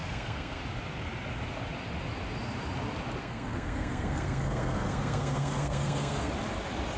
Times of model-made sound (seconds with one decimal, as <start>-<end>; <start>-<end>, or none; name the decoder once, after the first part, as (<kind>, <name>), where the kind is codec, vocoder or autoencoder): 0.0-0.6 (codec, SNAC); 3.2-6.3